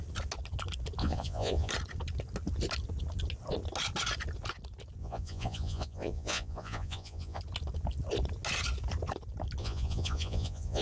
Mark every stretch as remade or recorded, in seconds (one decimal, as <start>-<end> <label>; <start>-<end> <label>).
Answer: 0.0-1.0 recorded; 1.0-1.7 remade; 1.7-5.0 recorded; 5.0-7.4 remade; 7.4-9.6 recorded; 9.6-10.8 remade